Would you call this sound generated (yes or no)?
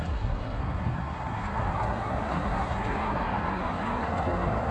yes